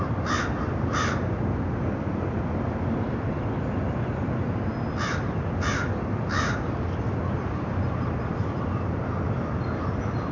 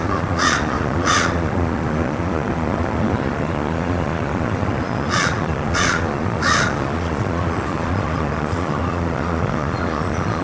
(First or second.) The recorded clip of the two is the first